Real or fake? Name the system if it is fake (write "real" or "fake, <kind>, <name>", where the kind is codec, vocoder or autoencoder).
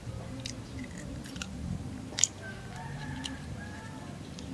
fake, vocoder, BigVGAN v2